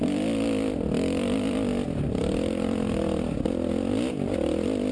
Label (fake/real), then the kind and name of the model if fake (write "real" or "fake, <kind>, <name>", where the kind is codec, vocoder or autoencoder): real